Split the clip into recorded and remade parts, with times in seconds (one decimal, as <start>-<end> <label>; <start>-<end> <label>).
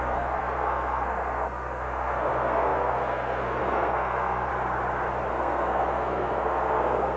0.0-4.5 remade; 4.5-5.3 recorded; 5.3-7.2 remade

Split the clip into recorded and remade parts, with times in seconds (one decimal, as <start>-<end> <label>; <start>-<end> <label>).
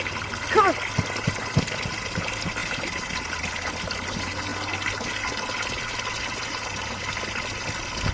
0.0-8.1 recorded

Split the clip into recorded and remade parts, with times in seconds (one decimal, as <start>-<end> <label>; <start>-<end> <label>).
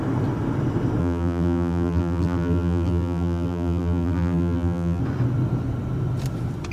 0.0-1.0 recorded; 1.0-5.0 remade; 5.0-6.7 recorded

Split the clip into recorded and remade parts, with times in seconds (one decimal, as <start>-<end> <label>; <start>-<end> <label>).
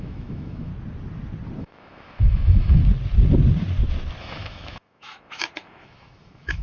0.0-0.7 remade; 0.7-1.6 recorded; 1.6-2.8 remade; 2.8-4.2 recorded; 4.2-6.6 remade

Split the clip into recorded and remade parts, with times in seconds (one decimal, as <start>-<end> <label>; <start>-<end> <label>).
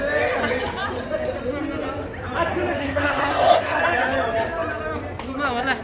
0.0-2.8 recorded; 2.8-3.8 remade; 3.8-5.8 recorded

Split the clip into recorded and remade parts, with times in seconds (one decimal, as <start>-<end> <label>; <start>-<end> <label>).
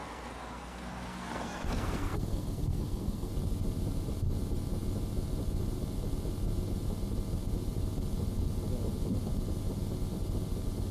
0.0-3.3 remade; 3.3-10.9 recorded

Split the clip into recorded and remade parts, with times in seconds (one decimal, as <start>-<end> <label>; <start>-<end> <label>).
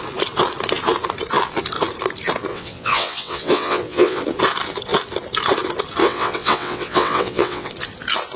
0.0-2.5 recorded; 2.5-4.2 remade; 4.2-6.0 recorded; 6.0-7.7 remade; 7.7-8.4 recorded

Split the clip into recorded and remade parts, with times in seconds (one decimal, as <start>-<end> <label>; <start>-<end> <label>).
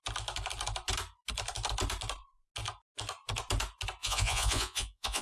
0.0-4.0 recorded; 4.0-5.2 remade